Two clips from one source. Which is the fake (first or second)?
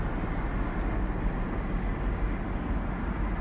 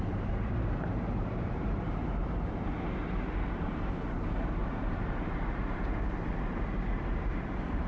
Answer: second